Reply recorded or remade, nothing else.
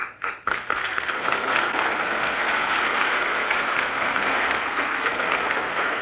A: remade